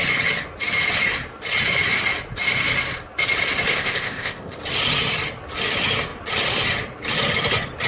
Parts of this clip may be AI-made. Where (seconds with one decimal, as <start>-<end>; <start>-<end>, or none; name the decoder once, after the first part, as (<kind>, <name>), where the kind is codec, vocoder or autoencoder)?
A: 3.7-4.6 (codec, ZipCodec)